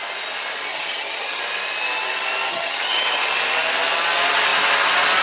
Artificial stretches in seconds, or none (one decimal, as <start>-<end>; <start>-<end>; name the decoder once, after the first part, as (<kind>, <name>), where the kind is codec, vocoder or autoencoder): 0.7-1.4 (vocoder, HiFi-GAN); 2.5-3.3